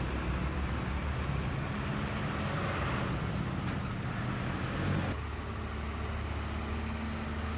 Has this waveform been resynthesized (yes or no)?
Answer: no